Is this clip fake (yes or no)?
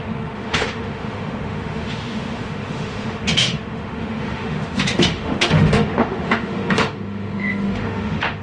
yes